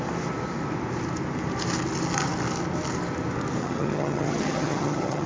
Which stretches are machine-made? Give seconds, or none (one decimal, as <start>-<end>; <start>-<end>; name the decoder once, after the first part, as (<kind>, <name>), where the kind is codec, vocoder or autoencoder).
3.6-5.3 (vocoder, HiFi-GAN)